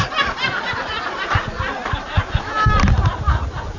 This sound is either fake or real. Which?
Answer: real